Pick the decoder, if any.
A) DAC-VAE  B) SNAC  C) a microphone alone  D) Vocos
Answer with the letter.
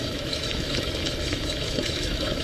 A